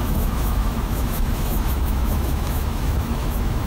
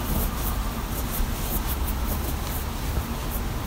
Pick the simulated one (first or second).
first